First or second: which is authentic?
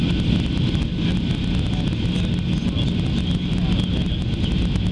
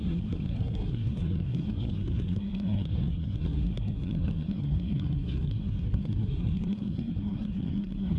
first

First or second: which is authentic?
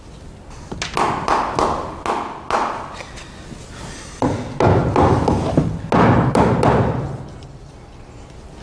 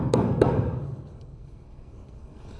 first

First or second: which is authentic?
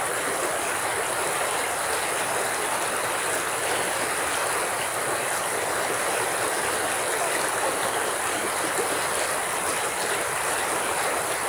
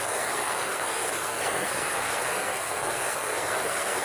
first